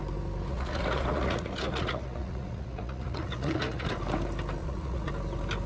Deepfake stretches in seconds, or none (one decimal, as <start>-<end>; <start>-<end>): 0.5-3.9; 4.6-5.1